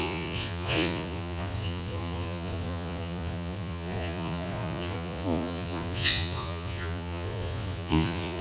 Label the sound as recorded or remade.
remade